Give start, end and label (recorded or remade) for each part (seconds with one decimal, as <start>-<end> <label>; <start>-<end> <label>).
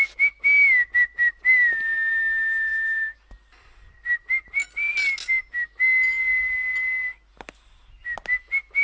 0.0-8.8 recorded